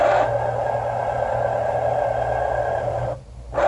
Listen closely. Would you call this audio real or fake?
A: real